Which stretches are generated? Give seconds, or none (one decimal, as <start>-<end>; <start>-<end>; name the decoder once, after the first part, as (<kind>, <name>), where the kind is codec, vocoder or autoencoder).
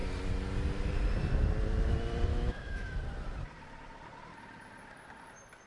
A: 2.3-3.0 (autoencoder, DAC-VAE)